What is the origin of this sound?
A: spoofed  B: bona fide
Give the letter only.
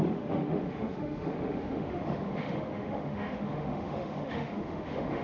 A